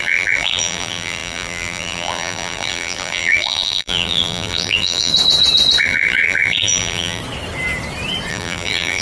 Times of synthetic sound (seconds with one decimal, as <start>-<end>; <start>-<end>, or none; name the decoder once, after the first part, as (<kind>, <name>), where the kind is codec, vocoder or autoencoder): 0.0-5.1 (vocoder, BigVGAN v2); 5.8-7.2; 8.3-9.0